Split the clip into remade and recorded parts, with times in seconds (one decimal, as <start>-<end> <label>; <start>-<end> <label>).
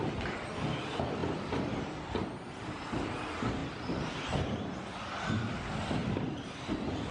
0.0-1.2 recorded; 1.2-1.8 remade; 1.8-3.6 recorded; 3.6-4.2 remade; 4.2-7.1 recorded